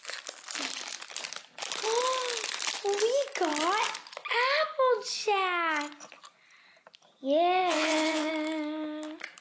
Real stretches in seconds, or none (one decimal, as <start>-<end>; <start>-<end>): 0.0-7.6; 8.3-9.4